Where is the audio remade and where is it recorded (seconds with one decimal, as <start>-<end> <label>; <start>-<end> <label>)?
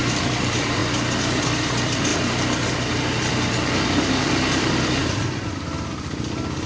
0.0-0.8 remade; 0.8-1.4 recorded; 1.4-2.1 remade; 2.1-4.2 recorded; 4.2-5.0 remade; 5.0-6.7 recorded